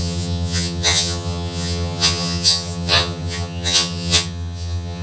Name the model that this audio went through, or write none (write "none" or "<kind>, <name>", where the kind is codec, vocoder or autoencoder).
vocoder, HiFi-GAN